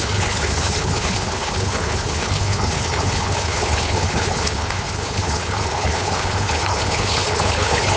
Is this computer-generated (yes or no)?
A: yes